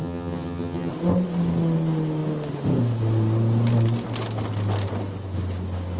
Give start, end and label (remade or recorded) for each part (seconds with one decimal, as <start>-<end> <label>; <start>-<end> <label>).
0.0-0.9 remade; 0.9-6.0 recorded